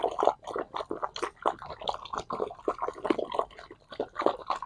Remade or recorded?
recorded